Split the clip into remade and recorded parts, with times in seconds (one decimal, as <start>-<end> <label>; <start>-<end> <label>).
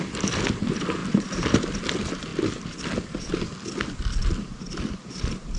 0.0-4.2 recorded; 4.2-4.8 remade; 4.8-5.6 recorded